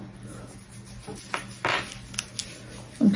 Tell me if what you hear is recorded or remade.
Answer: recorded